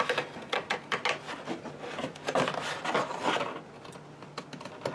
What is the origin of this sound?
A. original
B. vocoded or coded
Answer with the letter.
A